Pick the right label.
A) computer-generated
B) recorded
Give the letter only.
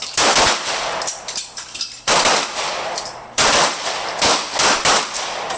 A